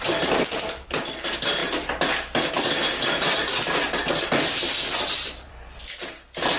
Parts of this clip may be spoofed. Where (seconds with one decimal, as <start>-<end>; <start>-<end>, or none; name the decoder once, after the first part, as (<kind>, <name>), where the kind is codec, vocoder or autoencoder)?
0.0-1.6 (vocoder, BigVGAN v2); 4.1-6.6